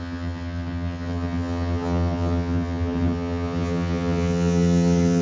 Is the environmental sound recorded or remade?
remade